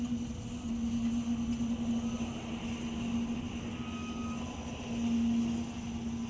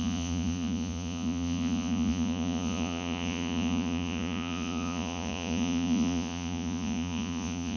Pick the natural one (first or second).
first